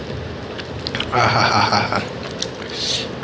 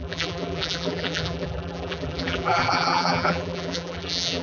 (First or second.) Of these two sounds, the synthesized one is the second